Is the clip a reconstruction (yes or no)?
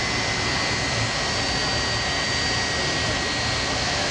no